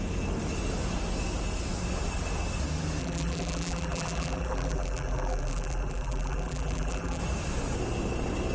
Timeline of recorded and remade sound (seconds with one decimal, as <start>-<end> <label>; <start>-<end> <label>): 0.0-3.0 recorded; 3.0-7.2 remade; 7.2-8.5 recorded